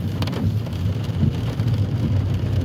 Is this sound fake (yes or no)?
no